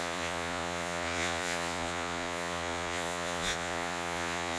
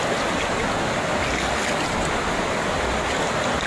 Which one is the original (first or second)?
second